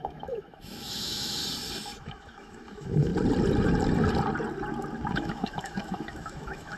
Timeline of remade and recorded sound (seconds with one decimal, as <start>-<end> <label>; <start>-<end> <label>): 0.0-1.4 remade; 1.4-2.0 recorded; 2.0-3.1 remade; 3.1-5.1 recorded; 5.1-6.8 remade